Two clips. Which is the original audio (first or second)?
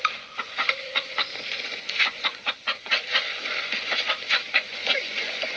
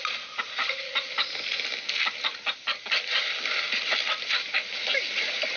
second